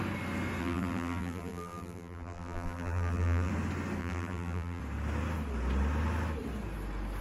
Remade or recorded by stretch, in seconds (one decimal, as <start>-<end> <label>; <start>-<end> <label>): 0.0-0.6 recorded; 0.6-3.5 remade; 3.5-4.0 recorded; 4.0-4.8 remade; 4.8-7.2 recorded